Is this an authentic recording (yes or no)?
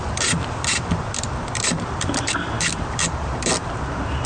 no